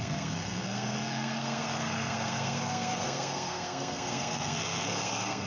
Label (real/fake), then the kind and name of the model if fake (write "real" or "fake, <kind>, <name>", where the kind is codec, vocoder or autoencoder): fake, codec, SNAC